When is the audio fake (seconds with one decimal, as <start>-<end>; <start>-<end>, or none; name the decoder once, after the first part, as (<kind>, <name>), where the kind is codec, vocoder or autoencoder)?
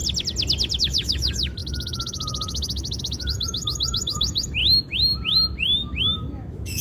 0.8-4.6 (autoencoder, DAC-VAE); 6.0-6.8